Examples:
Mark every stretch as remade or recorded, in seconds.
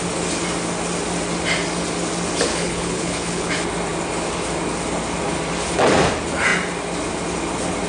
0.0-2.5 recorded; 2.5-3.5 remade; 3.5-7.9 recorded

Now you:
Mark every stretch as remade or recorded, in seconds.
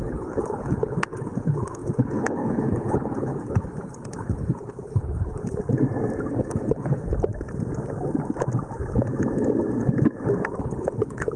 0.0-5.6 remade; 5.6-6.3 recorded; 6.3-7.1 remade; 7.1-10.6 recorded; 10.6-11.4 remade